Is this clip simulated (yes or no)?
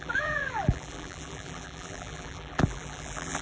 yes